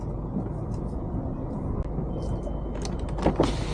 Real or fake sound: real